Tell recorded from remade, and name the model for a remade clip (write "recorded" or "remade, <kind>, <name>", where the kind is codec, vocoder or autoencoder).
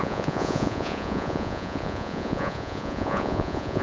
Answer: remade, vocoder, Vocos